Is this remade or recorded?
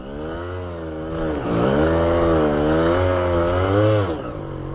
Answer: recorded